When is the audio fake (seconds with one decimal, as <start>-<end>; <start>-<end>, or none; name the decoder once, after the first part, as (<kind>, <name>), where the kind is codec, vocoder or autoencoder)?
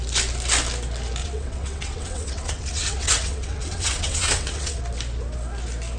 1.2-4.8 (vocoder, WaveNeXt)